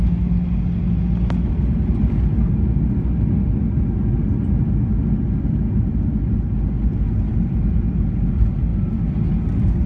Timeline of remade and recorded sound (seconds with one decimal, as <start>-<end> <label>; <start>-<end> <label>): 0.0-9.9 recorded